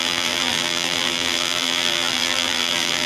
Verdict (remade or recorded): remade